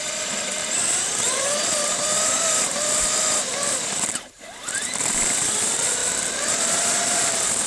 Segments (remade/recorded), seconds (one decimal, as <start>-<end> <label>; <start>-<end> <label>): 0.0-6.0 remade; 6.0-6.5 recorded; 6.5-7.7 remade